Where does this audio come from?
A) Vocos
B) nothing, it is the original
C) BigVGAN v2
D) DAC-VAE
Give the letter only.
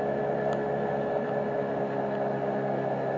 B